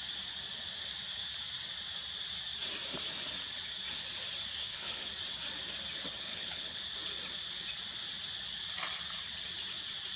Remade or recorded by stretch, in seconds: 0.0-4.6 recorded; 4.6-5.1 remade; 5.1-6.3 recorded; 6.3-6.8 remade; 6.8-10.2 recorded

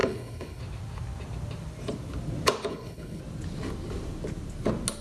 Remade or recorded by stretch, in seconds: 0.0-0.6 remade; 0.6-2.7 recorded; 2.7-3.2 remade; 3.2-5.0 recorded